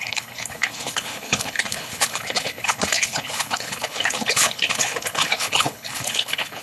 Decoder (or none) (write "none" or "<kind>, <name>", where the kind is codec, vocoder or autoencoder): codec, HILCodec